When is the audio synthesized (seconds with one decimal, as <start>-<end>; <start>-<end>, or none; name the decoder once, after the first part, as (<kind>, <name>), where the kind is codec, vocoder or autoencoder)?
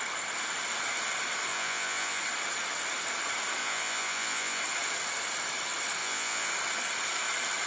1.5-2.2 (vocoder, Vocos); 3.6-4.6; 6.0-6.5